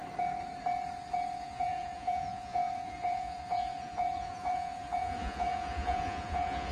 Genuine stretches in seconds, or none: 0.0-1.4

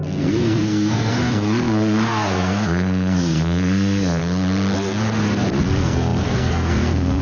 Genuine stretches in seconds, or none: 4.2-5.6

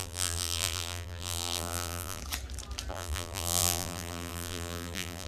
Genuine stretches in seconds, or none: 2.2-2.9

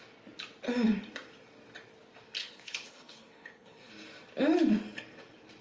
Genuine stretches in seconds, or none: 0.0-2.4; 3.9-5.6